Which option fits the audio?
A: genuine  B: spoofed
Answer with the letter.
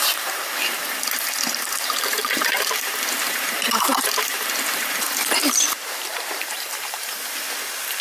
B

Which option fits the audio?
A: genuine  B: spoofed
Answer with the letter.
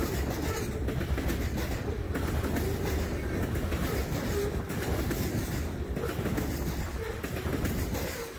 A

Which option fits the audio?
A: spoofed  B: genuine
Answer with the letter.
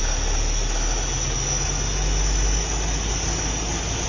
B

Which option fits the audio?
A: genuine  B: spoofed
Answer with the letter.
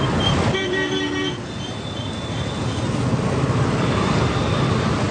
A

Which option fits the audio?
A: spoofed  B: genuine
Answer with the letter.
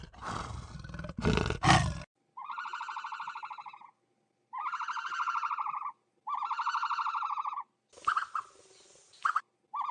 B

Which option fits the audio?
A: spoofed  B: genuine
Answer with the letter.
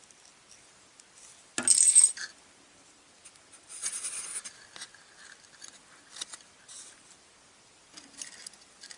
B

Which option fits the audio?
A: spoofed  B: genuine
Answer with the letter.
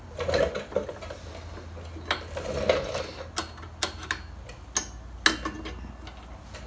B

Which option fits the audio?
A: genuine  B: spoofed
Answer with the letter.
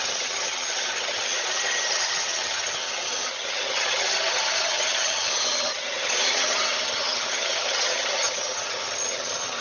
B